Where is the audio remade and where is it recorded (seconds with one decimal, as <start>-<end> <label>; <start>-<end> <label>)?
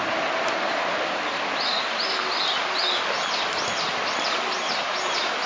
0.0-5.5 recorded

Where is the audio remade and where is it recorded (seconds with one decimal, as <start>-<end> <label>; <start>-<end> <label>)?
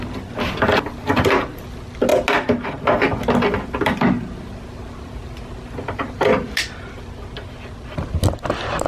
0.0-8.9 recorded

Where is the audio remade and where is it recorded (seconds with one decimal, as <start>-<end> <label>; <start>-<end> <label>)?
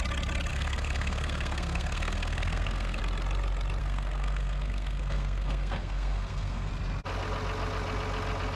0.0-0.5 recorded; 0.5-3.0 remade; 3.0-3.8 recorded; 3.8-6.7 remade; 6.7-8.6 recorded